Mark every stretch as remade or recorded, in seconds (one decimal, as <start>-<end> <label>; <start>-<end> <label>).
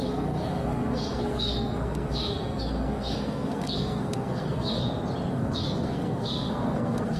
0.0-4.8 remade; 4.8-5.3 recorded; 5.3-7.2 remade